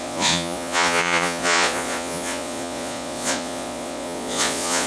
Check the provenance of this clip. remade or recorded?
remade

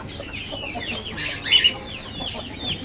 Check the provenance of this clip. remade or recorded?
recorded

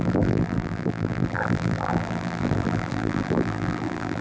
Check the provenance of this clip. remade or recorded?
remade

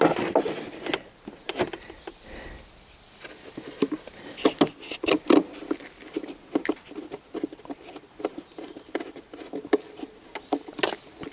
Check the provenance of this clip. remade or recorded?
recorded